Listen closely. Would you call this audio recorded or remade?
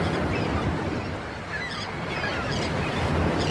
recorded